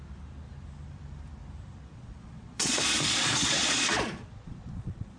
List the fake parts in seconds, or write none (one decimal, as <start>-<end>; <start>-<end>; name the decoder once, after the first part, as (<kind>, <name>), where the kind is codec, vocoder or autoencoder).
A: 1.9-5.2 (vocoder, Vocos)